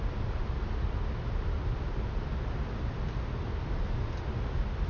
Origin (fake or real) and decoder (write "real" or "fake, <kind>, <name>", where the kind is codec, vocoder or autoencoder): real